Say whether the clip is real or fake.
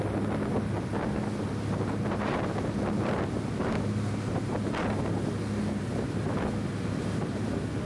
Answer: real